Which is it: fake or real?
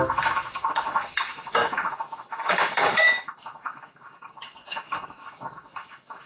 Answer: fake